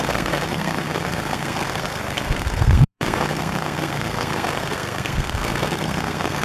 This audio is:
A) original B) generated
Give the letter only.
B